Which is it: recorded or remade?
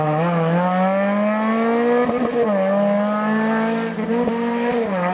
recorded